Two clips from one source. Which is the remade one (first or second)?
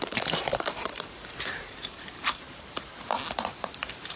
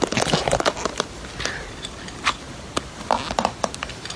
first